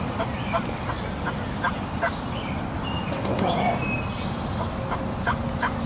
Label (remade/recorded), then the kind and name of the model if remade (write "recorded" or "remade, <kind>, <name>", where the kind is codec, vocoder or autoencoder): recorded